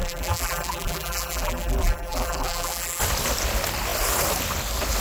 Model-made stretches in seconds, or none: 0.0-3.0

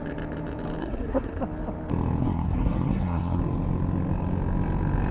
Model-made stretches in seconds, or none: 0.8-1.4; 2.2-3.4

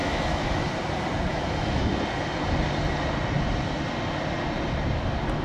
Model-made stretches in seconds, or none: 0.0-0.7; 1.3-1.9